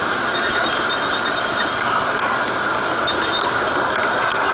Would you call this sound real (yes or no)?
yes